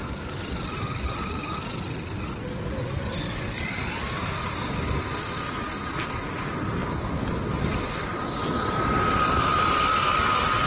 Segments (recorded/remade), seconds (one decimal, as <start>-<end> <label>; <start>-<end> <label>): 0.0-10.7 recorded